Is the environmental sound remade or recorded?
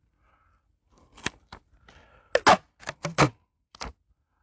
recorded